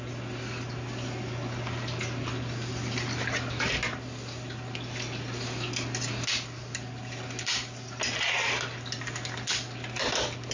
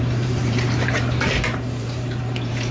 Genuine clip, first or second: first